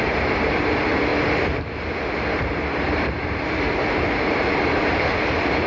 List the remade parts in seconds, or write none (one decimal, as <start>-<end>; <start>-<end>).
0.0-1.1; 2.4-5.7

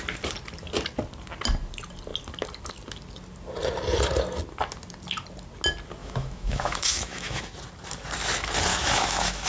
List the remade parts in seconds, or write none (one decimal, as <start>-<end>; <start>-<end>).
6.0-7.4; 8.7-9.5

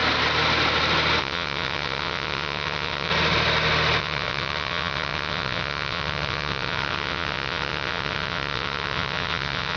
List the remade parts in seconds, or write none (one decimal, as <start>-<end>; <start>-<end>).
1.2-3.1; 4.0-9.8

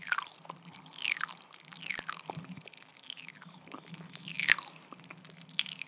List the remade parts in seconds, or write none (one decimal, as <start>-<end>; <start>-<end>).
none

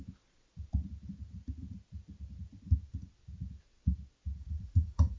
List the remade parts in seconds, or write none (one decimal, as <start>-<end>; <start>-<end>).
4.4-5.2